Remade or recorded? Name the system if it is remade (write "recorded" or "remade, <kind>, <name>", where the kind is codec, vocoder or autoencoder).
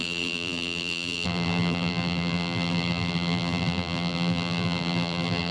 remade, vocoder, BigVGAN v2